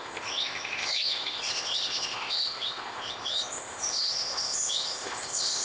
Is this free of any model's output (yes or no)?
no